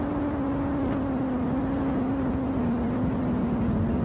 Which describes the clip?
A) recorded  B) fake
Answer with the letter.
A